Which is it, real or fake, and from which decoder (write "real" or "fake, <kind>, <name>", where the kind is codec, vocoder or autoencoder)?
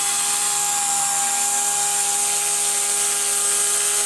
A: real